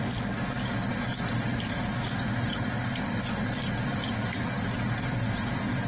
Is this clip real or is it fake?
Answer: real